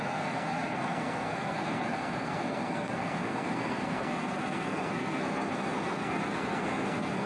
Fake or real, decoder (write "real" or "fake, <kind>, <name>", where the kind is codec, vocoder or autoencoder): fake, codec, SNAC